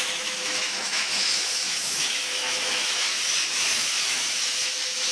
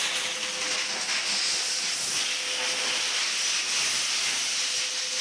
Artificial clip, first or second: first